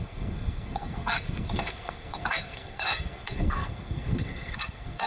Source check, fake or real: fake